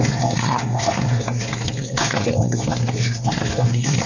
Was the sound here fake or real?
fake